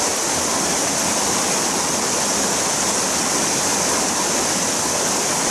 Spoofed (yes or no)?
no